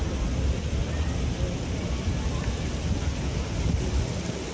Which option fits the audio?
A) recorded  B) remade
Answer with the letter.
A